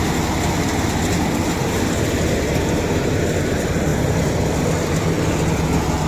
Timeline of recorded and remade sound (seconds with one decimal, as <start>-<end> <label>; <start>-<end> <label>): 0.0-6.1 recorded